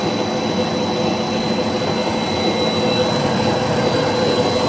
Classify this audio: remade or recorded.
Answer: recorded